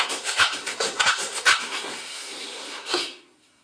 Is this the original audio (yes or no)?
no